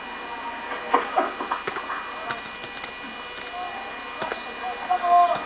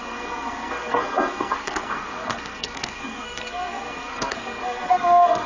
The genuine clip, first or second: first